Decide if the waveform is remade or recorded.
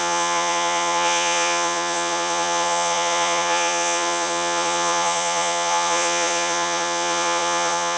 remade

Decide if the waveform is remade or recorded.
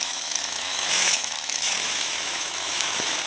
remade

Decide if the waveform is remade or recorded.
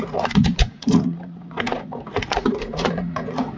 remade